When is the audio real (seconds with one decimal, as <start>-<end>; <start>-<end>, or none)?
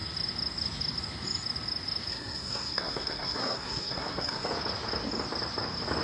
0.0-2.1; 4.5-6.0